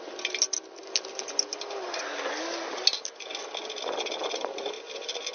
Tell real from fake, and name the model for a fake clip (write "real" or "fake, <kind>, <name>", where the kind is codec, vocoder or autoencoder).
real